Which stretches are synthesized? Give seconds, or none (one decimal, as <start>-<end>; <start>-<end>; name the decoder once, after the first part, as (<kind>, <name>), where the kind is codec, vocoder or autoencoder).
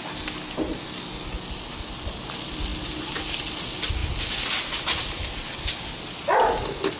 none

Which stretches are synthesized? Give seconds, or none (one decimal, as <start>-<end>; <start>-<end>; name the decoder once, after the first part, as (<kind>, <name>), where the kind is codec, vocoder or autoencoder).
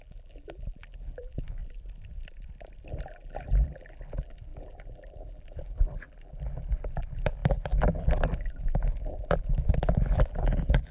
0.0-1.6 (vocoder, BigVGAN v2); 3.1-10.9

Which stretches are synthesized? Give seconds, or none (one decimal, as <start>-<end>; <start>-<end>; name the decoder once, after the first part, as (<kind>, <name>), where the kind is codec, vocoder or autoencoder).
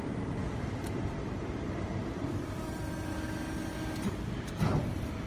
0.4-3.1 (vocoder, BigVGAN v2); 3.7-5.3